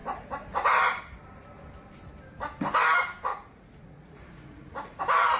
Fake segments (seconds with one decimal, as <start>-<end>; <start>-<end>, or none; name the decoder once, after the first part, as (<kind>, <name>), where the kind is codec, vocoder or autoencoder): 3.3-5.0 (vocoder, Vocos)